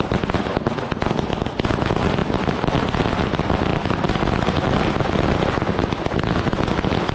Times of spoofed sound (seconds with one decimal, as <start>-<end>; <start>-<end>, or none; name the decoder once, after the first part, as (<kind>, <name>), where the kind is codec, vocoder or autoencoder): none